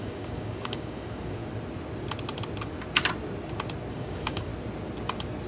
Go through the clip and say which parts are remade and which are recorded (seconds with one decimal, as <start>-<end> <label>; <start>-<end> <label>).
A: 0.0-1.4 remade; 1.4-3.9 recorded; 3.9-4.5 remade; 4.5-5.5 recorded